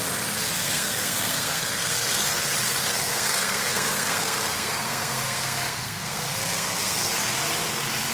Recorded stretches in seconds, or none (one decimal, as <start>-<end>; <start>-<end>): 0.0-0.6; 2.3-2.9; 7.1-8.1